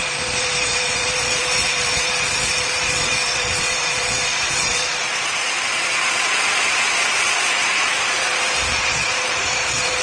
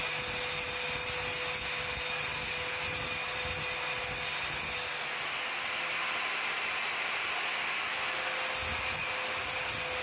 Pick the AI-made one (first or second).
first